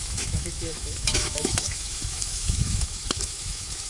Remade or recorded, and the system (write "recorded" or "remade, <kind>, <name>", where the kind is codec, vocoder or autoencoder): remade, autoencoder, DAC-VAE